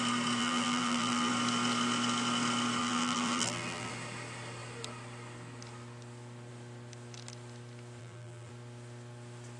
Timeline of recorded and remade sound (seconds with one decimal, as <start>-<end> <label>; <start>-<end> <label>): 0.0-0.4 recorded; 0.4-1.3 remade; 1.3-2.8 recorded; 2.8-3.9 remade; 3.9-8.0 recorded; 8.0-8.5 remade; 8.5-9.6 recorded

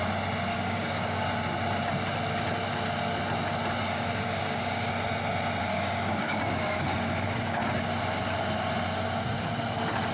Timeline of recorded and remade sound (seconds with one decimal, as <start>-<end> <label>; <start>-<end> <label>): 0.0-0.5 recorded; 0.5-1.3 remade; 1.3-3.8 recorded; 3.8-4.9 remade; 4.9-5.6 recorded; 5.6-7.6 remade; 7.6-10.1 recorded

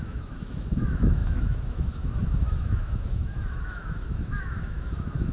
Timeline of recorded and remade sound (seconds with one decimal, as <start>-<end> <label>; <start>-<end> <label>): 0.0-5.3 remade

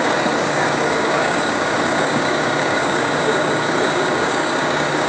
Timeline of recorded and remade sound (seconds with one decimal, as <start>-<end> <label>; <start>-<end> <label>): 0.0-5.1 remade

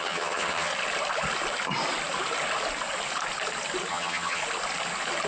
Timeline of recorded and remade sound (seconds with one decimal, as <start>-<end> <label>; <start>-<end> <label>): 0.0-0.7 remade; 0.7-3.9 recorded; 3.9-4.4 remade; 4.4-5.3 recorded

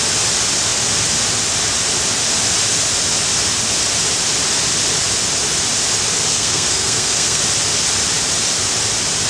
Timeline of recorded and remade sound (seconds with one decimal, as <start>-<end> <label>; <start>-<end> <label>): 0.0-6.3 recorded; 6.3-7.4 remade; 7.4-9.3 recorded